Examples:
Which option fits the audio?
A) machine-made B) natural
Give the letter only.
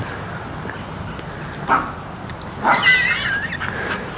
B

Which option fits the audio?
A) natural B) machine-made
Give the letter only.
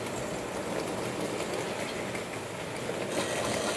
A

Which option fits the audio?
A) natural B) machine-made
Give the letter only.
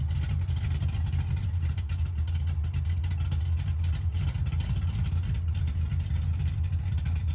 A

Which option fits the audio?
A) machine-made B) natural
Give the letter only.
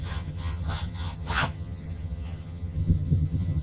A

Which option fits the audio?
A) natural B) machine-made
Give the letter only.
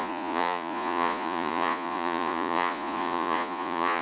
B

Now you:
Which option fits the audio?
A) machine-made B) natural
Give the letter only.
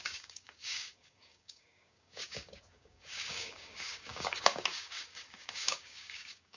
A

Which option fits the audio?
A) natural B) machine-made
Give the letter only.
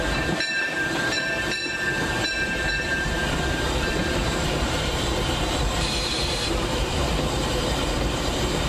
B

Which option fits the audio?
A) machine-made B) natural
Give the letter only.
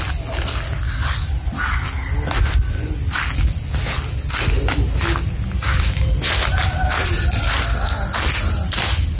B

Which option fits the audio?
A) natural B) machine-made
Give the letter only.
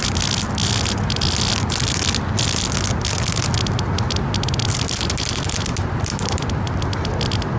A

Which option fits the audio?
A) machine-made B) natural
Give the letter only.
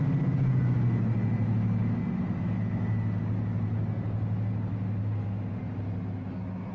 B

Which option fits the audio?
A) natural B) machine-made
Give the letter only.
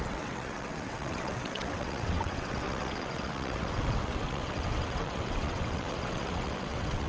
B